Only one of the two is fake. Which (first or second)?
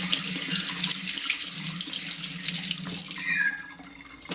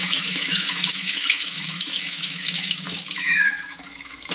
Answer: second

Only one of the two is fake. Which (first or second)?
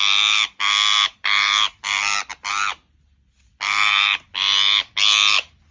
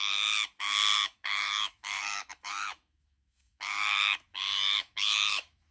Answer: second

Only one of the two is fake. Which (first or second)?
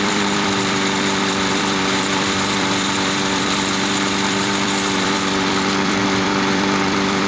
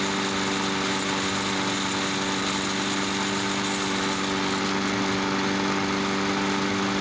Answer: first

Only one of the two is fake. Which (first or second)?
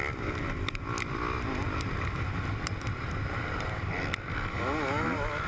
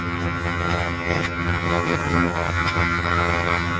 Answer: second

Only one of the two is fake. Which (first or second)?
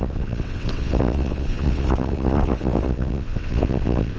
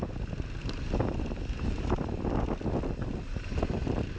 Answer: first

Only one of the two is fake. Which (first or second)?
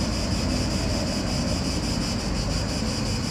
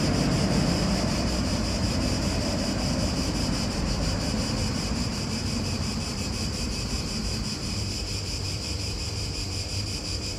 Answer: second